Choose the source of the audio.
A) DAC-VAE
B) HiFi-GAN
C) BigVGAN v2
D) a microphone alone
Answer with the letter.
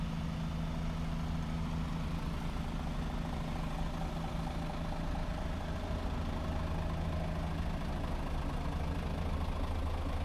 D